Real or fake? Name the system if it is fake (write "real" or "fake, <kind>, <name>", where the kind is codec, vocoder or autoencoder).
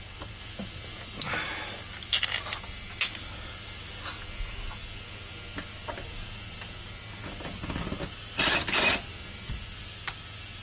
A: real